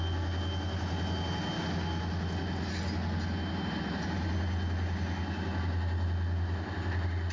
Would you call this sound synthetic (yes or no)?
no